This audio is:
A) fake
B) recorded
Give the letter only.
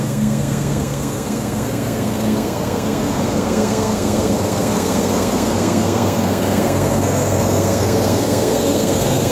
A